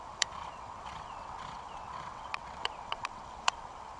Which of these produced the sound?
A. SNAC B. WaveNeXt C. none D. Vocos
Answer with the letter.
B